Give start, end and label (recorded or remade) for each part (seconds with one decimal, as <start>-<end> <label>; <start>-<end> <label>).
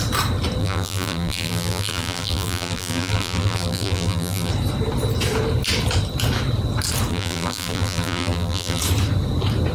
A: 0.0-0.6 recorded; 0.6-4.5 remade; 4.5-7.1 recorded; 7.1-8.8 remade; 8.8-9.7 recorded